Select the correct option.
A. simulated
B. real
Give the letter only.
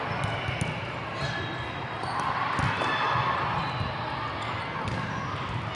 B